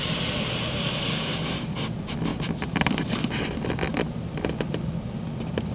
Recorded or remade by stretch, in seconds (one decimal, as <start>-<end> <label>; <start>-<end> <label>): 0.0-5.7 recorded